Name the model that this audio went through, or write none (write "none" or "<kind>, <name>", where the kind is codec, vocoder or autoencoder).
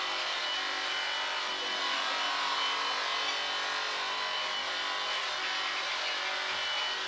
none